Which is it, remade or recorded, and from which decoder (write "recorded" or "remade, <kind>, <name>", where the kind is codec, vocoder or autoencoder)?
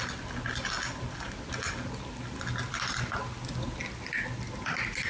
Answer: recorded